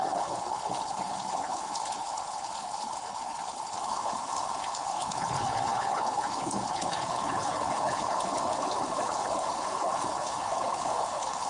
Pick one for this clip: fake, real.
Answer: fake